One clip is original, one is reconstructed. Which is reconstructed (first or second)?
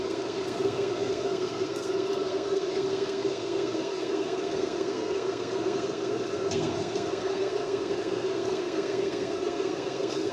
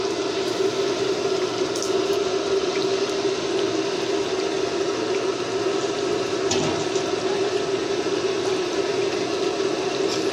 first